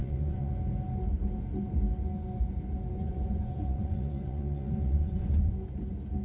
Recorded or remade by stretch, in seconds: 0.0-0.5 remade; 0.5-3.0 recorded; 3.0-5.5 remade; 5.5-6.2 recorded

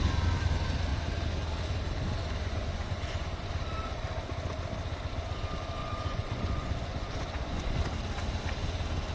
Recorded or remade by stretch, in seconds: 0.0-2.2 recorded; 2.2-3.5 remade; 3.5-5.8 recorded; 5.8-7.8 remade; 7.8-9.1 recorded

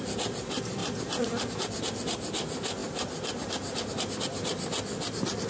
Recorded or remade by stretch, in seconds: 0.0-5.5 recorded

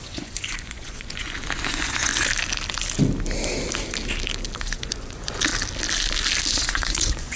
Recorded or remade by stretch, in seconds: 0.0-2.1 remade; 2.1-4.6 recorded; 4.6-5.5 remade; 5.5-6.5 recorded; 6.5-7.4 remade